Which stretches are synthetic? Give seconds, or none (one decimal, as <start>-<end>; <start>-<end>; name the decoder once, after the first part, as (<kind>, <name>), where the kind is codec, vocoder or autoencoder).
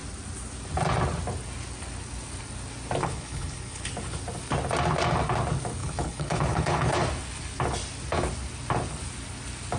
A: 3.0-3.9 (codec, HILCodec); 5.8-7.0